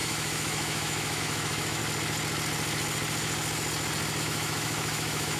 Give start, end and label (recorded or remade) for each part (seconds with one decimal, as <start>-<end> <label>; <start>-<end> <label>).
0.0-1.8 remade; 1.8-4.2 recorded; 4.2-5.4 remade